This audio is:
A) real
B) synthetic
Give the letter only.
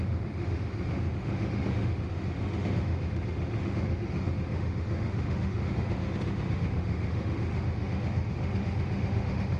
B